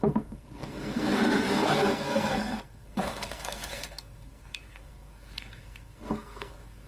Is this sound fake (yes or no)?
yes